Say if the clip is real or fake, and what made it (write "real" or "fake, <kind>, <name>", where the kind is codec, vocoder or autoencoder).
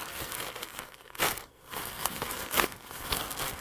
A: fake, codec, SNAC